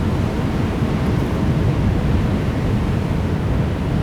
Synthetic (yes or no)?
no